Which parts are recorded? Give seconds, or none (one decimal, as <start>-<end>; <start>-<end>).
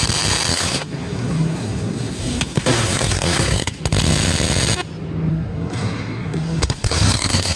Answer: 0.0-0.5; 3.8-5.3